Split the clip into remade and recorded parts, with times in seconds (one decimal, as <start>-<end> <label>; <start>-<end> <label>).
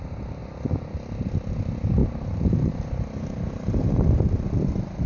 0.0-2.0 recorded; 2.0-4.2 remade; 4.2-5.1 recorded